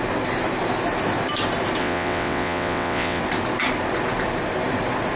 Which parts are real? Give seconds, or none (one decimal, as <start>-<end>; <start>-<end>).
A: 0.0-1.8; 3.2-5.2